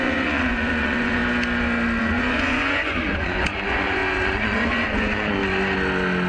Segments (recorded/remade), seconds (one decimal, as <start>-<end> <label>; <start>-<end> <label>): 0.0-1.2 remade; 1.2-2.0 recorded; 2.0-5.4 remade; 5.4-6.3 recorded